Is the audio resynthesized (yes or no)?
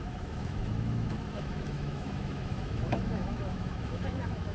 yes